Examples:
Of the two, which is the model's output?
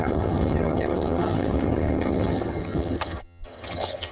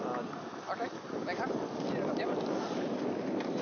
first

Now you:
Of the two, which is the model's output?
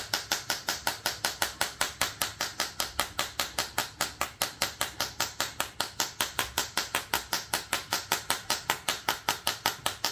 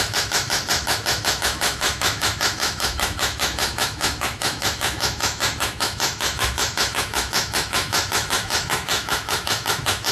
second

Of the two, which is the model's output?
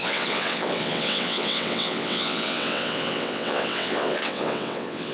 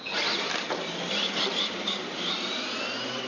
first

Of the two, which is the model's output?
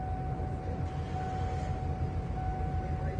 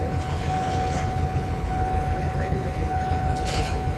second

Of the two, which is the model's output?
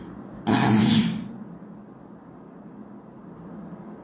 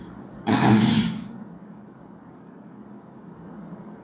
second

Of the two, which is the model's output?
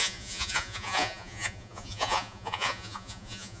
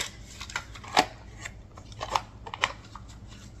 first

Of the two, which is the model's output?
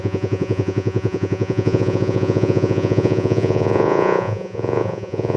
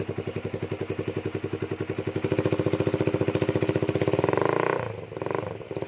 first